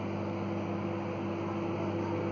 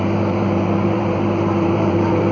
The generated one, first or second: second